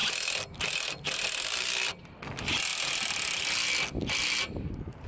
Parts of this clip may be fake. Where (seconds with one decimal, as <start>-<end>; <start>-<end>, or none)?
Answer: none